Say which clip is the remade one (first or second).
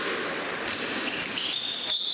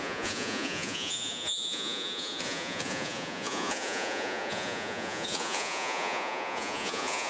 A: second